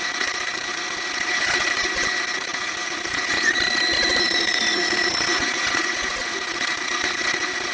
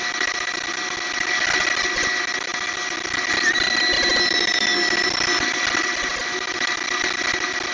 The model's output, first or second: first